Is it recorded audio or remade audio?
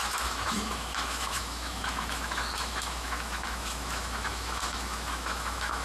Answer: remade